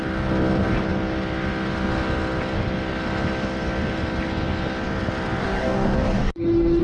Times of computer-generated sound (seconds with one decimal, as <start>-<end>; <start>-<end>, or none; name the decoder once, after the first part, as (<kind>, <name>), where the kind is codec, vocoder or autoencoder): 5.4-6.8 (codec, DAC)